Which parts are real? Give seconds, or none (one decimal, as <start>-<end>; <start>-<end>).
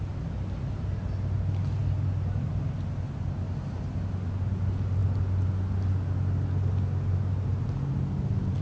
0.0-8.6